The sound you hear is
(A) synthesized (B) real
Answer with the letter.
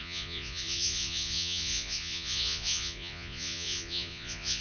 A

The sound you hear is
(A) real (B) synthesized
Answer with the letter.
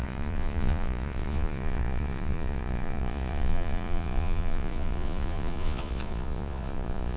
B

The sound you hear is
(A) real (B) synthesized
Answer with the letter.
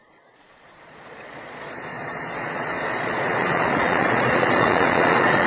B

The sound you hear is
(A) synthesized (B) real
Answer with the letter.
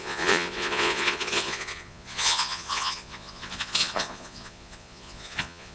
A